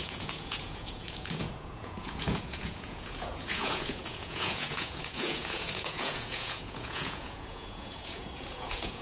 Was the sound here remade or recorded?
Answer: remade